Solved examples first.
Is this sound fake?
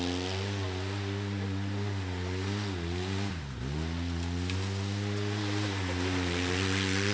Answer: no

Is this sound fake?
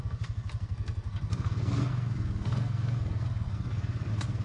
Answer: yes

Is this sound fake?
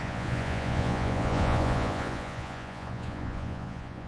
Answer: yes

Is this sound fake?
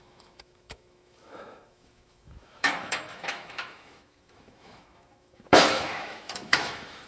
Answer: yes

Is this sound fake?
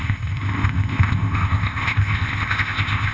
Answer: yes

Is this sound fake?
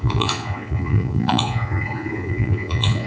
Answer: yes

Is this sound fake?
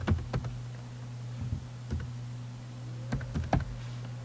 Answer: no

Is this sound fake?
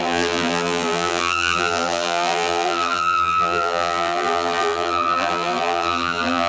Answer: yes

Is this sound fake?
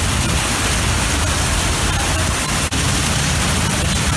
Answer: no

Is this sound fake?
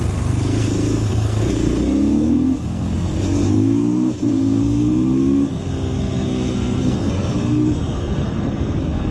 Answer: yes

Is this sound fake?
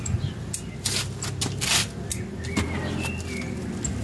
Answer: no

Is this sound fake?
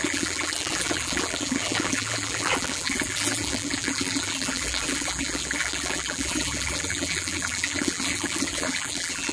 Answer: yes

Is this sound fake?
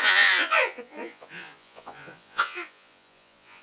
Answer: yes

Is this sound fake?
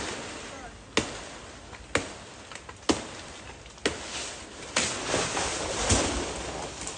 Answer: no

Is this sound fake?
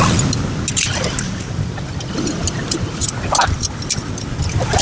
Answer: no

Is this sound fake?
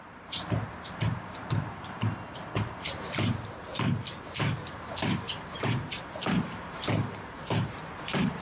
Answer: yes